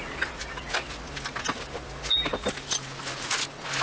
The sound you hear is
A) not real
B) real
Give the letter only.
B